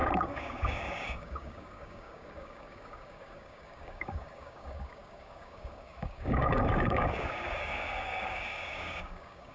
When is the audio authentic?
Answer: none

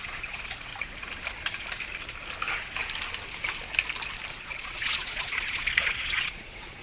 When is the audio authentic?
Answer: 0.7-4.3

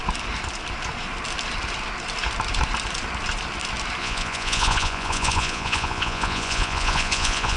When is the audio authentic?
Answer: 0.0-4.0

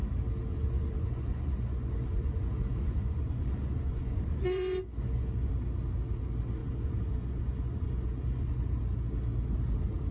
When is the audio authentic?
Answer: 0.0-0.5; 5.5-6.6; 8.8-10.1